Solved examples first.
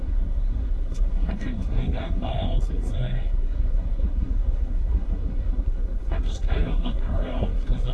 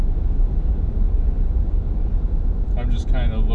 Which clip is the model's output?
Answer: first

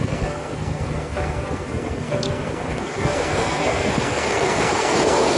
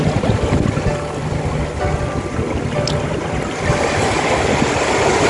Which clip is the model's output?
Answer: first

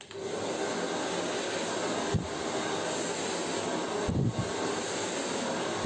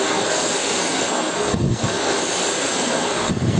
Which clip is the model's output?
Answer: second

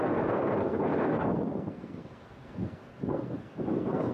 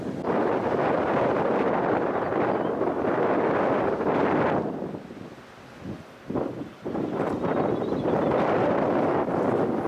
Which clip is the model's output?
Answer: first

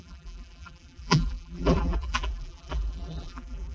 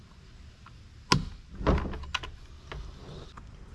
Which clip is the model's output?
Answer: first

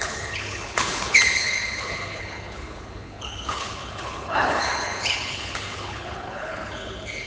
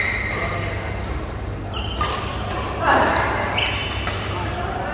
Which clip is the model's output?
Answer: first